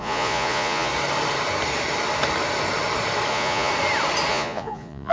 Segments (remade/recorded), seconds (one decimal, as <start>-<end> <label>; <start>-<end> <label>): 0.0-0.9 remade; 0.9-3.3 recorded; 3.3-3.7 remade; 3.7-4.3 recorded; 4.3-5.1 remade